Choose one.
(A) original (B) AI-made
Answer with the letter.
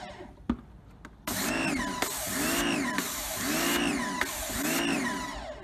A